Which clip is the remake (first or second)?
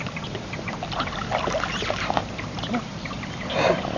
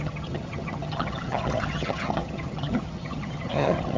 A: second